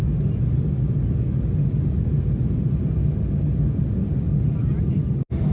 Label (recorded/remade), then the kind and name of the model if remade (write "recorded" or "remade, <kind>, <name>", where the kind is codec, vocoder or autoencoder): recorded